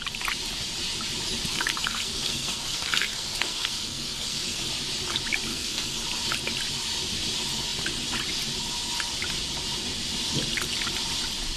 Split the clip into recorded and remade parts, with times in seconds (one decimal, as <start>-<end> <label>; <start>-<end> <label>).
0.0-1.5 recorded; 1.5-4.7 remade; 4.7-5.5 recorded; 5.5-6.0 remade; 6.0-11.6 recorded

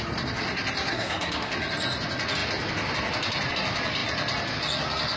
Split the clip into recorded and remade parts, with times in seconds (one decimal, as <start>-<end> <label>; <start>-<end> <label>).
0.0-0.9 recorded; 0.9-1.5 remade; 1.5-5.2 recorded

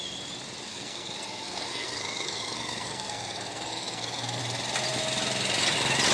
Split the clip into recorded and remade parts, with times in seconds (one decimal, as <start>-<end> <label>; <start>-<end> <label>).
0.0-0.7 recorded; 0.7-4.4 remade; 4.4-6.1 recorded

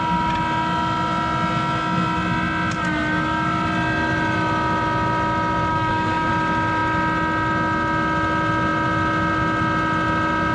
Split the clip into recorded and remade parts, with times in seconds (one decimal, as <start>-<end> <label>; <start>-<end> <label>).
0.0-5.7 recorded; 5.7-6.3 remade; 6.3-10.5 recorded

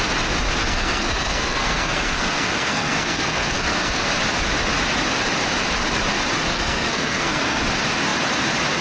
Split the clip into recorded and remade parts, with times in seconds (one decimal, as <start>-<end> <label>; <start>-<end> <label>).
0.0-0.6 recorded; 0.6-4.1 remade; 4.1-6.5 recorded; 6.5-7.6 remade; 7.6-8.8 recorded